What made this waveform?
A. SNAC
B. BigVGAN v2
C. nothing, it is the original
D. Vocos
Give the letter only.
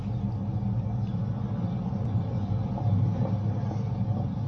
C